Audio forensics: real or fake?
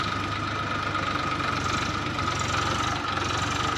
real